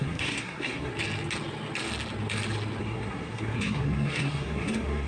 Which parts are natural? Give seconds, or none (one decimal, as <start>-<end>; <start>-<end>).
0.9-2.8